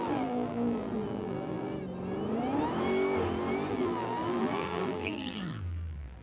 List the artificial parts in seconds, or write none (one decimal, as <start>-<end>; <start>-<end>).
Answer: 0.0-1.7; 3.7-6.2